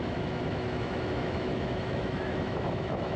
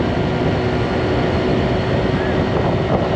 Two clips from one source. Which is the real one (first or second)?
second